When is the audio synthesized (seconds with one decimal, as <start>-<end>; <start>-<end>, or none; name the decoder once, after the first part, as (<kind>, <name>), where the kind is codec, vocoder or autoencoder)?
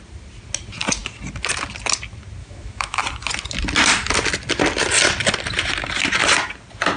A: 2.4-3.0 (autoencoder, DAC-VAE)